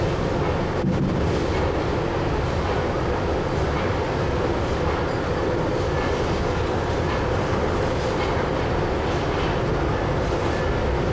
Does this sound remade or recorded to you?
recorded